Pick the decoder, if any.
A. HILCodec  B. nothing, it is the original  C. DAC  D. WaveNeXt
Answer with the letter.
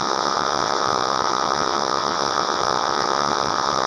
D